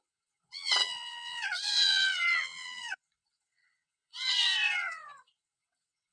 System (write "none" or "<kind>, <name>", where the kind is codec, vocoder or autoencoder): vocoder, WaveNeXt